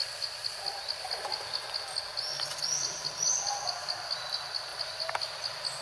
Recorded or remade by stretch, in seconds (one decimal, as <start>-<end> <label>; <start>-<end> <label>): 0.0-5.8 recorded